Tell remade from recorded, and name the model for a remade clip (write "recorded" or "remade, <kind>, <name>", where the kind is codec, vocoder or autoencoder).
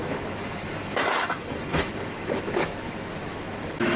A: remade, autoencoder, DAC-VAE